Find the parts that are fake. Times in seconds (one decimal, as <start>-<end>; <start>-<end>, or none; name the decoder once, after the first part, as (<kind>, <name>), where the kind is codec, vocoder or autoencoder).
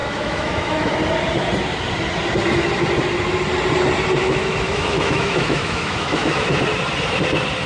0.0-0.9 (autoencoder, DAC-VAE); 4.2-6.6